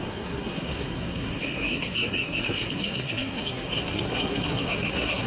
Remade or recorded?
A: remade